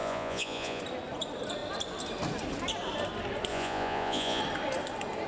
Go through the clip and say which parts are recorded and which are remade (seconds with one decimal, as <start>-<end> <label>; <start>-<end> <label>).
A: 0.0-0.8 remade; 0.8-3.5 recorded; 3.5-4.4 remade; 4.4-5.3 recorded